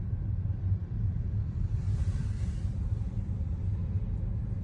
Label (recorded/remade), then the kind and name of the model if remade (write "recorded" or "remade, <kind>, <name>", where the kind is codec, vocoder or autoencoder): remade, vocoder, BigVGAN v2